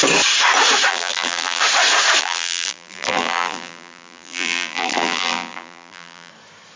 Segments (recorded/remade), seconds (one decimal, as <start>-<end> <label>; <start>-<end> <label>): 0.0-0.9 recorded; 0.9-1.6 remade; 1.6-2.2 recorded; 2.2-6.3 remade; 6.3-6.8 recorded